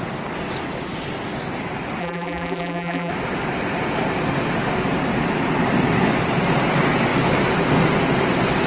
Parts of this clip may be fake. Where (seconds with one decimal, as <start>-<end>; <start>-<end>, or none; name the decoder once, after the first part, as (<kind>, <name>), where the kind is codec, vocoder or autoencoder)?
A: 2.0-3.1 (vocoder, BigVGAN v2)